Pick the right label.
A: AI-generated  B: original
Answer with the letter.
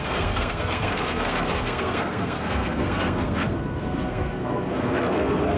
A